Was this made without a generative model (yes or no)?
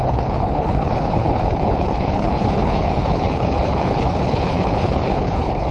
no